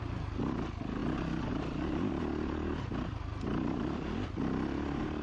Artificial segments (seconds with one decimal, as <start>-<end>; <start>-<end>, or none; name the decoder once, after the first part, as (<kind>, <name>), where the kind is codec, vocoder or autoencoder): none